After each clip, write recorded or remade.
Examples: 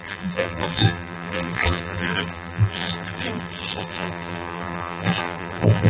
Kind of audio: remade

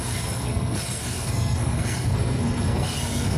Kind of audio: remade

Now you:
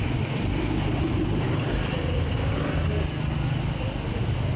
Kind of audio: recorded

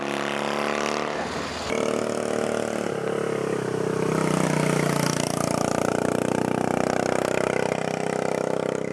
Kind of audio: recorded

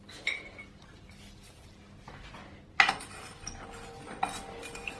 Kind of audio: recorded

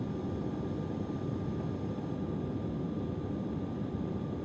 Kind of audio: recorded